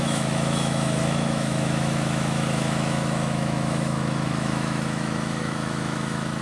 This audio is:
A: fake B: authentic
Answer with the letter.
A